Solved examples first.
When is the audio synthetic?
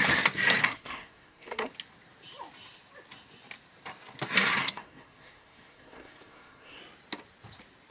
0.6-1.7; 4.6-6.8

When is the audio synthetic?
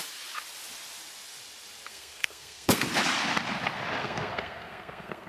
1.9-2.8; 4.0-5.3